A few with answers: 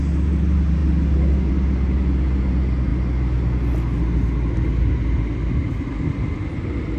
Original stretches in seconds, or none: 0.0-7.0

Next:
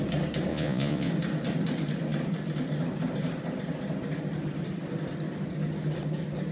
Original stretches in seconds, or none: 0.0-0.5; 1.1-6.5